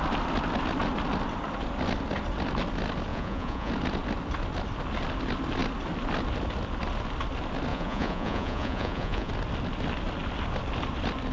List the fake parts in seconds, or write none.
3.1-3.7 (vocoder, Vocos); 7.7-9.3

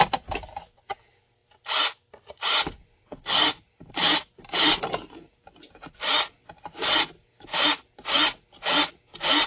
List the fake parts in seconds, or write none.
none

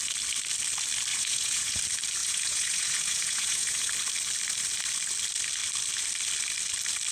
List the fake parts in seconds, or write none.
1.1-1.8 (vocoder, Vocos); 2.2-3.9

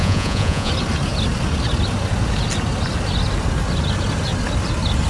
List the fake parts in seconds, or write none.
0.0-0.7 (vocoder, Vocos)

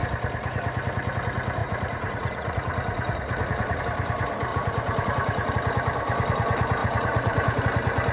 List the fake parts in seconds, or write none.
1.6-3.8 (vocoder, Vocos); 4.5-5.5; 6.8-7.6